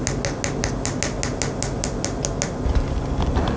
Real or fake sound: real